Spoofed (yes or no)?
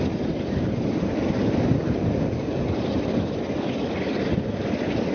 no